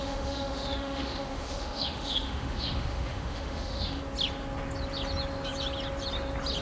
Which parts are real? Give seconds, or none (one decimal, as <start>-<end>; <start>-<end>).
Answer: 4.0-6.6